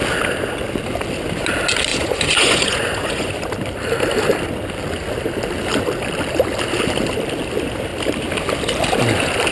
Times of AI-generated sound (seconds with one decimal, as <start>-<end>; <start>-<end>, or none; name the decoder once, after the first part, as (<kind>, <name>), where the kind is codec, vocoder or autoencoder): 1.9-3.3 (vocoder, Vocos)